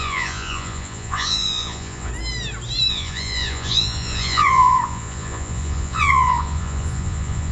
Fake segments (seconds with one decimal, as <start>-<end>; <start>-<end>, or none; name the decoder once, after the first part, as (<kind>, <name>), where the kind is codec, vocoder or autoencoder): 0.0-2.1 (vocoder, Vocos); 2.9-7.5